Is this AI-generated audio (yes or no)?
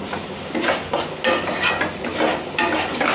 no